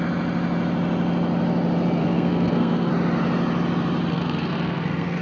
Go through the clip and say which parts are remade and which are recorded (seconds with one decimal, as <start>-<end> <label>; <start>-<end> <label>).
0.0-2.0 recorded; 2.0-2.9 remade; 2.9-4.1 recorded; 4.1-5.2 remade